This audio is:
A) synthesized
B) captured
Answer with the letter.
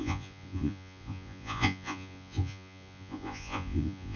A